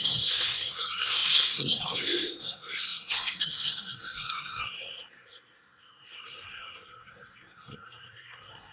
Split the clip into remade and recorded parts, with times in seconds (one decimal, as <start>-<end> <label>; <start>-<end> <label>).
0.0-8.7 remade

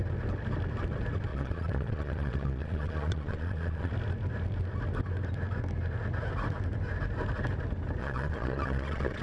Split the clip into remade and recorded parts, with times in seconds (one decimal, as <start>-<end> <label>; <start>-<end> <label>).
0.0-1.3 recorded; 1.3-3.9 remade; 3.9-8.0 recorded; 8.0-9.2 remade

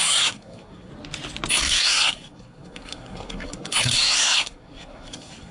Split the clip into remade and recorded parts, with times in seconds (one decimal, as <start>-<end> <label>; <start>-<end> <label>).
0.0-0.9 remade; 0.9-1.5 recorded; 1.5-5.5 remade

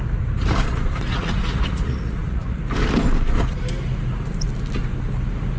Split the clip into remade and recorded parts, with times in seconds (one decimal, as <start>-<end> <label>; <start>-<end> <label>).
0.0-1.1 recorded; 1.1-2.6 remade; 2.6-5.6 recorded

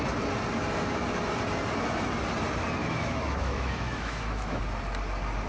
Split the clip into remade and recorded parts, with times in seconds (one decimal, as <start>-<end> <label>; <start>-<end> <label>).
0.0-2.8 recorded; 2.8-4.6 remade; 4.6-5.5 recorded

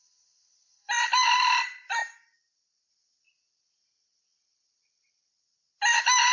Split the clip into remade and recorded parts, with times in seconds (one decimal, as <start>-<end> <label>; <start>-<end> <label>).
0.0-0.9 remade; 0.9-6.3 recorded